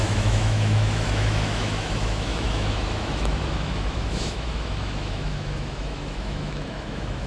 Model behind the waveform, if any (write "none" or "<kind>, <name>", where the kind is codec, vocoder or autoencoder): autoencoder, DAC-VAE